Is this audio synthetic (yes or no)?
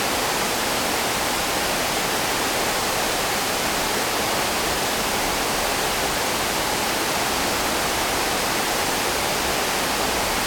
no